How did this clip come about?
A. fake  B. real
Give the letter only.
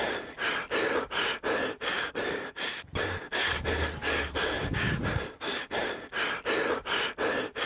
B